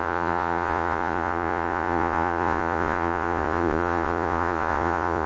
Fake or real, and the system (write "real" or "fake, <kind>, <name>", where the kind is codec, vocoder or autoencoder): fake, vocoder, Vocos